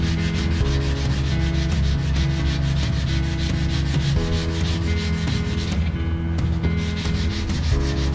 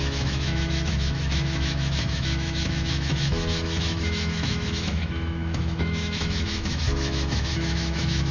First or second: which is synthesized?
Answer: second